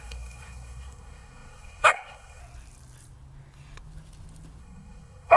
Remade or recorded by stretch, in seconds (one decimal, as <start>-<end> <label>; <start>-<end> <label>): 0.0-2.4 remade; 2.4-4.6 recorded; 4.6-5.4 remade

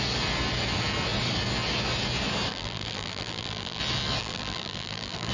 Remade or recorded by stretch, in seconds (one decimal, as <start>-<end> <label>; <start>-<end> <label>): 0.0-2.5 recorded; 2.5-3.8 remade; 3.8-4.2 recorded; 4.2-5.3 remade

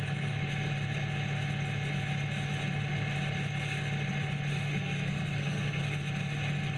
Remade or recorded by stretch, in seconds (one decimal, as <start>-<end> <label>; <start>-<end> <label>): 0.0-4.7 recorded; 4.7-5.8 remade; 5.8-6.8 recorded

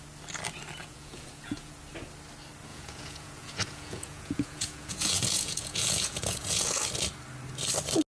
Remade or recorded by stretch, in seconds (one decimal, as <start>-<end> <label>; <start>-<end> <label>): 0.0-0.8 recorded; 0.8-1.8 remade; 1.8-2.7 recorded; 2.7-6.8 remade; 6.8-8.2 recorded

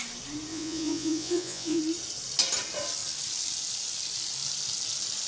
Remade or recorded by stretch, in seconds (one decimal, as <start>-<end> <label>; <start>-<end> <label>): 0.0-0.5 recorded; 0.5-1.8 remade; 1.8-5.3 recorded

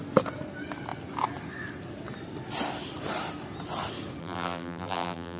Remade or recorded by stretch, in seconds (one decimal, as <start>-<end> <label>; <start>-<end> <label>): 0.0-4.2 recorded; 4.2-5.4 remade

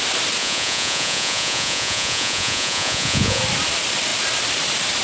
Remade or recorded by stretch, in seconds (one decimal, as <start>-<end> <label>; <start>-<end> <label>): 0.0-0.4 recorded; 0.4-3.4 remade; 3.4-5.0 recorded